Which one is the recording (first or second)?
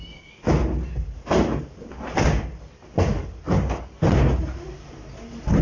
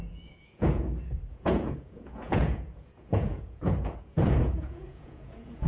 first